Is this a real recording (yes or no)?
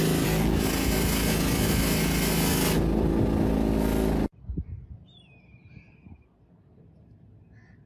yes